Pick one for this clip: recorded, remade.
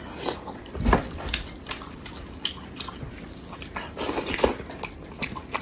recorded